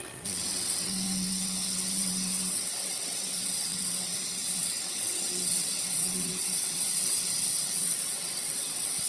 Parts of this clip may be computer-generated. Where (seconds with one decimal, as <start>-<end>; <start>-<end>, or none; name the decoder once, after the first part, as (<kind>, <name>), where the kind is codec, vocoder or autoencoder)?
0.0-9.1 (vocoder, WaveNeXt)